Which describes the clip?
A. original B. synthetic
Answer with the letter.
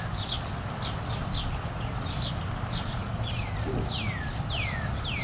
A